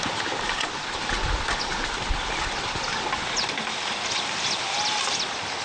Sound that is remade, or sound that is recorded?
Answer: recorded